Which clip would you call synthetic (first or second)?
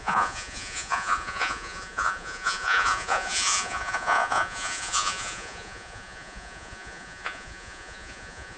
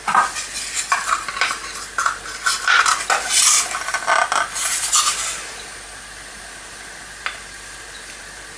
first